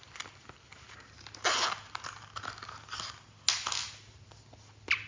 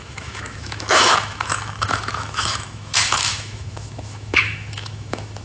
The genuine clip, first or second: first